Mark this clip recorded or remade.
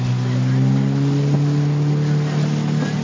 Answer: recorded